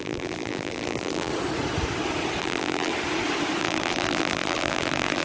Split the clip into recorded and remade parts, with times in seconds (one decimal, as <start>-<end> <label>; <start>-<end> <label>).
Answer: 0.0-1.3 remade; 1.3-2.4 recorded; 2.4-2.9 remade; 2.9-3.6 recorded; 3.6-5.2 remade